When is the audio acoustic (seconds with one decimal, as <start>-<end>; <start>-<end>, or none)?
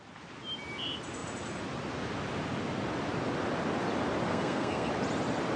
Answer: 0.0-4.3; 4.9-5.6